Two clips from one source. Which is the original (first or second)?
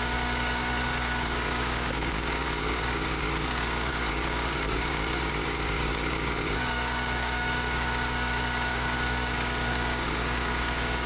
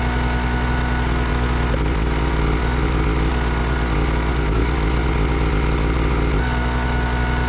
second